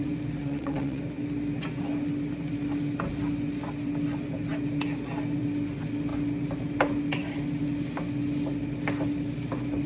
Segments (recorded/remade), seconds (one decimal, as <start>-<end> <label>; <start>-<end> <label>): 0.0-0.4 recorded; 0.4-1.0 remade; 1.0-9.9 recorded